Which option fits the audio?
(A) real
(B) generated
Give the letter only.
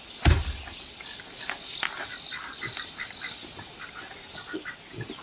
A